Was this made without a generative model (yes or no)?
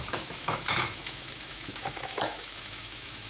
no